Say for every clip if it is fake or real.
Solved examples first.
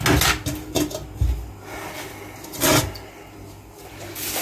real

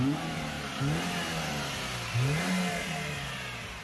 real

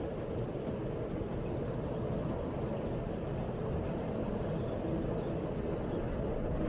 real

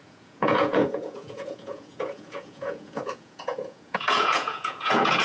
fake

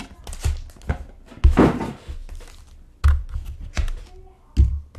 real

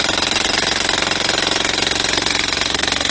real